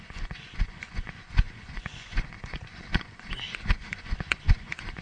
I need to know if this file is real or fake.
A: fake